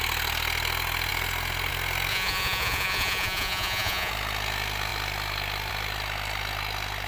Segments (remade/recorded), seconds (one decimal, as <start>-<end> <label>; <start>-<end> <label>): 0.0-2.1 recorded; 2.1-4.1 remade; 4.1-7.1 recorded

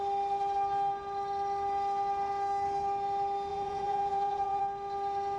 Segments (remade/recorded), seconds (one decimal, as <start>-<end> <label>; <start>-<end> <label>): 0.0-3.5 recorded; 3.5-4.6 remade; 4.6-5.4 recorded